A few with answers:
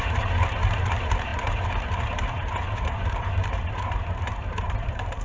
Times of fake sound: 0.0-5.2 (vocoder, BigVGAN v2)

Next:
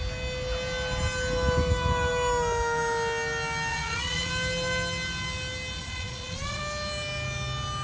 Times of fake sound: 3.7-4.3 (vocoder, Vocos); 5.8-6.6

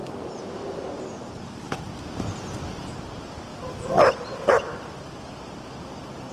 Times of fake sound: 2.9-3.5 (vocoder, BigVGAN v2); 4.5-6.3

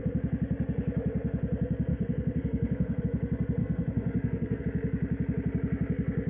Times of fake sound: 1.9-3.0 (codec, SNAC); 3.6-4.6

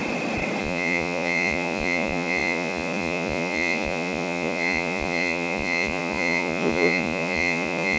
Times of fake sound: 0.6-8.0 (vocoder, Vocos)

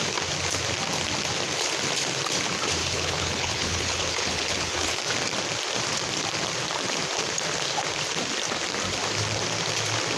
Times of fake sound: 2.8-5.0 (codec, HILCodec)

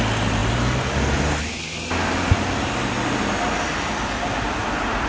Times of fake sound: none